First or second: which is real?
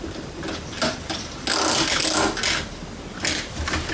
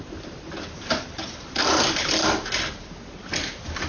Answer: first